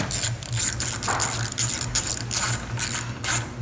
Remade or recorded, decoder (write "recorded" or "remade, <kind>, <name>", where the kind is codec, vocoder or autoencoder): remade, vocoder, BigVGAN v2